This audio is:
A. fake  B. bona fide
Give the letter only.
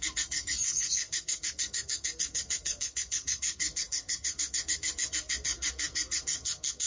A